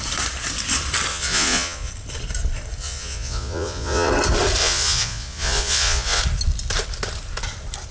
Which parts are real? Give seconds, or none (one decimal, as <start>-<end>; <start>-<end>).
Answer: 0.0-1.1; 1.9-2.8; 4.1-4.6; 6.2-7.9